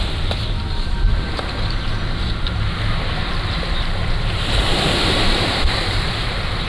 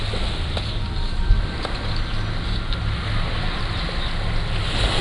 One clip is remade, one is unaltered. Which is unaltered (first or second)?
second